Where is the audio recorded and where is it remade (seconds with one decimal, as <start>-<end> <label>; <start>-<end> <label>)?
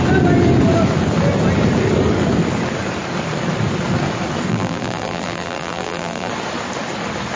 0.0-4.5 recorded; 4.5-6.3 remade; 6.3-7.4 recorded